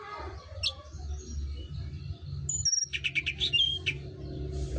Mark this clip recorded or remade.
recorded